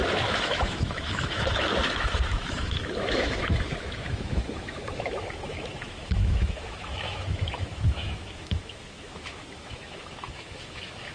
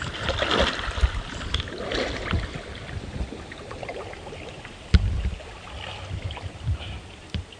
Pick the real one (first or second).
second